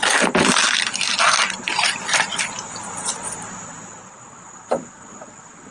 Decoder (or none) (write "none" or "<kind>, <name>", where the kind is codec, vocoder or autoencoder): none